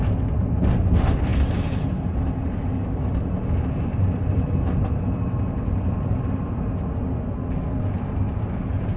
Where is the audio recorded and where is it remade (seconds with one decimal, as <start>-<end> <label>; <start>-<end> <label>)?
0.0-9.0 recorded